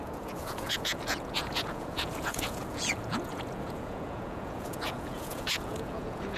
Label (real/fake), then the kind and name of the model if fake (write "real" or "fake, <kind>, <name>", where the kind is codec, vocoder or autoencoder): fake, vocoder, Vocos